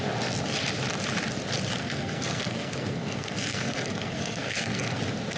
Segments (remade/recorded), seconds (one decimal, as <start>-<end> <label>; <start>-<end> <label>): 0.0-1.8 recorded; 1.8-5.0 remade; 5.0-5.4 recorded